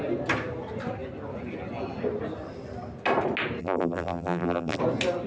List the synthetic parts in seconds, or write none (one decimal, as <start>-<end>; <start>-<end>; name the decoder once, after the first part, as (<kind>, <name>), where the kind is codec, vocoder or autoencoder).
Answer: 3.6-4.8 (vocoder, BigVGAN v2)